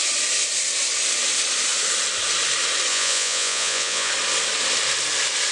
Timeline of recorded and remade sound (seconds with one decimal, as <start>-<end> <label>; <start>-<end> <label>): 0.0-2.9 recorded; 2.9-4.1 remade; 4.1-5.5 recorded